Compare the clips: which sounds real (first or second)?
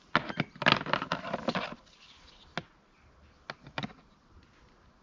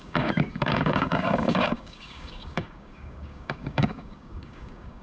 first